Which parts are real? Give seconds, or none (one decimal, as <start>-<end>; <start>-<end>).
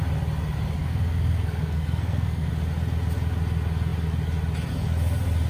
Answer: 0.0-0.8; 2.5-5.5